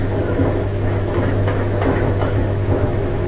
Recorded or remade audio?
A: remade